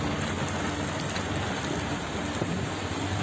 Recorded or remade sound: recorded